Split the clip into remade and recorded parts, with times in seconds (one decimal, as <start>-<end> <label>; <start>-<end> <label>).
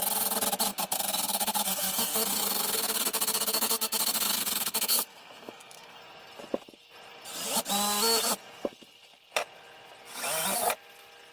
0.0-0.7 recorded; 0.7-6.0 remade; 6.0-11.3 recorded